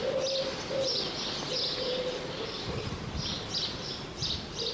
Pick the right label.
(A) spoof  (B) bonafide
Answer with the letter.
B